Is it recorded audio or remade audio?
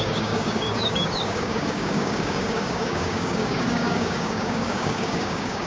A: remade